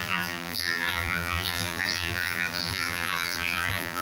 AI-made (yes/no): yes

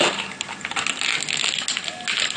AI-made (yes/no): no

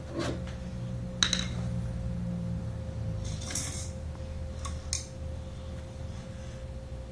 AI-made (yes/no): no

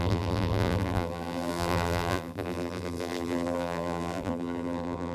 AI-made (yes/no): yes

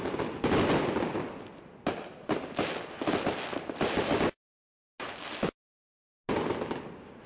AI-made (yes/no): no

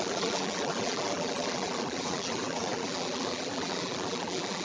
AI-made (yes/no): yes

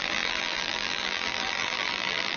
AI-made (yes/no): yes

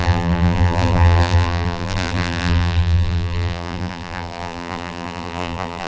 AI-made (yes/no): yes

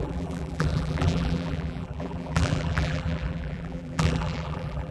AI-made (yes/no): yes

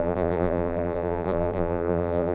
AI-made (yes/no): yes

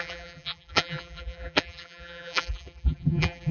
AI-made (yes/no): yes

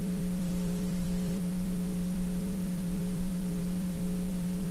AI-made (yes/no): yes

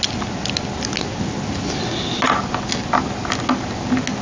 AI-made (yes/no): no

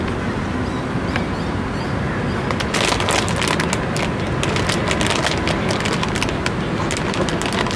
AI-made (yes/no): no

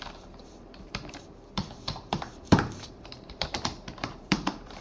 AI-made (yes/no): yes